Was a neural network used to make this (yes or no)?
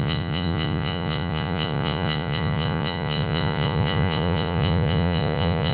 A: yes